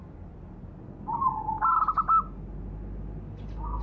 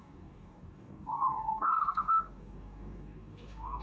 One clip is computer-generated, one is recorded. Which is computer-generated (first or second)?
second